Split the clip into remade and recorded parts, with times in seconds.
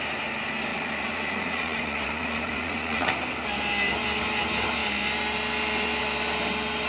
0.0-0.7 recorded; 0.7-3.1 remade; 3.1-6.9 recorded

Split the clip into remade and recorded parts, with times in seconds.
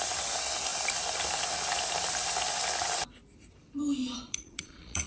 0.0-4.0 recorded; 4.0-5.1 remade